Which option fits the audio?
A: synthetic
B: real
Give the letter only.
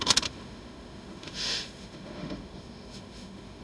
A